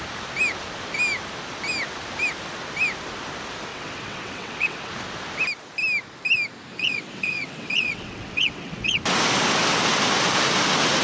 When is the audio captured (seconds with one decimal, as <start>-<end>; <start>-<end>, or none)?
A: 0.0-3.7; 4.9-6.7; 9.0-11.0